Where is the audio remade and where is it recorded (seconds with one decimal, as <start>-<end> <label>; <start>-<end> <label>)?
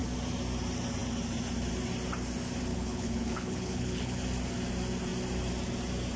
0.0-2.7 recorded; 2.7-4.2 remade; 4.2-6.2 recorded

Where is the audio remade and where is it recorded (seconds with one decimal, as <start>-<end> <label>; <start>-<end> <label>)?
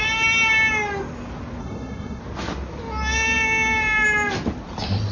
0.0-1.6 recorded; 1.6-2.2 remade; 2.2-5.1 recorded